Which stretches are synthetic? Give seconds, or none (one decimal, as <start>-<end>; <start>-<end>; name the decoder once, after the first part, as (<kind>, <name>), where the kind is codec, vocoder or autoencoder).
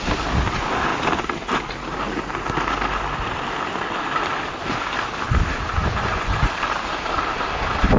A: 5.8-6.5 (vocoder, Vocos)